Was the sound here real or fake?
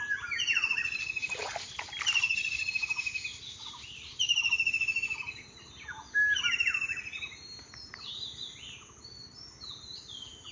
real